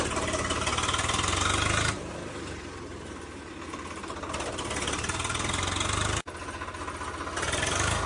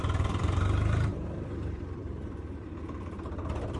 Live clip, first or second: first